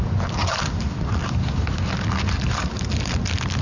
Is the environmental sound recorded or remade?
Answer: remade